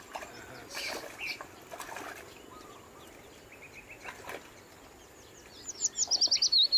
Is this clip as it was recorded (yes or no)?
yes